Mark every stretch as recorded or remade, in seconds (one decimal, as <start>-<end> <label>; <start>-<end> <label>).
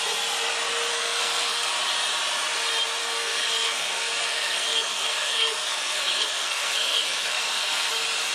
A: 0.0-0.9 recorded; 0.9-1.7 remade; 1.7-3.0 recorded; 3.0-7.9 remade; 7.9-8.3 recorded